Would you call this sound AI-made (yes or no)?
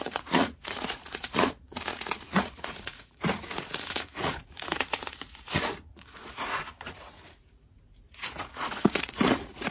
yes